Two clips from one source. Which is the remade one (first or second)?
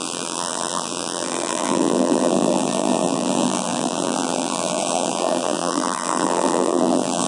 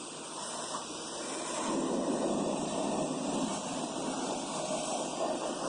first